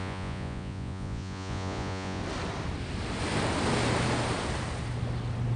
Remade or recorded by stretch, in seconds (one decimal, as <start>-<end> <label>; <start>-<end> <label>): 0.0-2.2 remade; 2.2-5.6 recorded